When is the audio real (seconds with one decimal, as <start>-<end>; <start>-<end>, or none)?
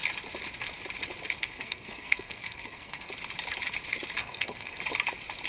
0.0-1.4; 3.1-4.2; 4.8-5.5